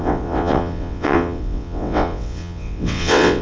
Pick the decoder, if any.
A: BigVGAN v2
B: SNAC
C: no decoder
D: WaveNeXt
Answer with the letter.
D